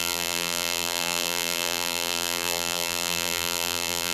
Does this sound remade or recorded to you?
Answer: remade